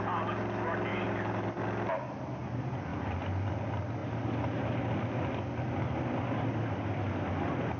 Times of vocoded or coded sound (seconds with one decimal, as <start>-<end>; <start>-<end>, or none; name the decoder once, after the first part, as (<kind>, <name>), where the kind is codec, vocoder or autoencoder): 0.9-1.6 (vocoder, BigVGAN v2)